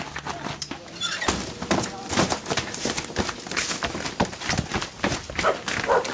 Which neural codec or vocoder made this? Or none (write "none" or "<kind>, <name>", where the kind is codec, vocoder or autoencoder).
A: none